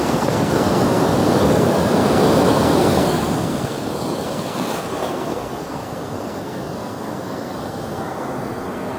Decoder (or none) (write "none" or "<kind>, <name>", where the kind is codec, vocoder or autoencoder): codec, SNAC